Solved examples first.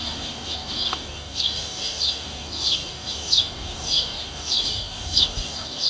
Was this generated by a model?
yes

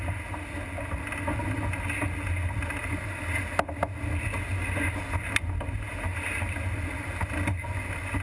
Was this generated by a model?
no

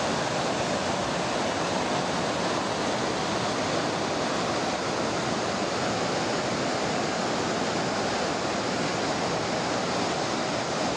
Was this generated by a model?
no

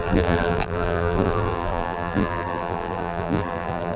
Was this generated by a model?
yes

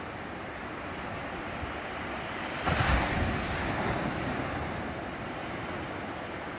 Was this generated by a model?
no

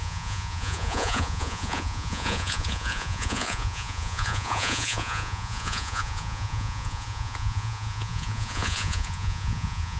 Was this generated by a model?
yes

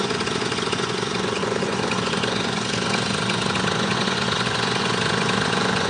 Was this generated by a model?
yes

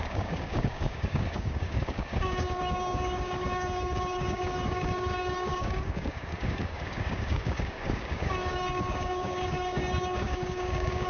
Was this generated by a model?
yes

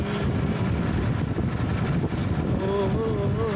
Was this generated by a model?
no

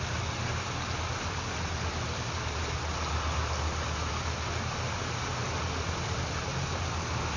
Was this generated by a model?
no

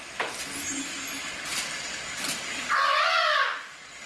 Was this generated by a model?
no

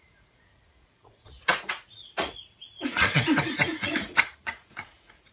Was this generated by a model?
yes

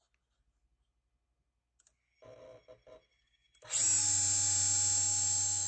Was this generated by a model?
no